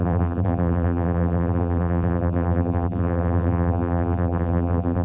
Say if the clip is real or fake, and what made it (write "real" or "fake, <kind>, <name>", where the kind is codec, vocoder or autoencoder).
fake, vocoder, BigVGAN v2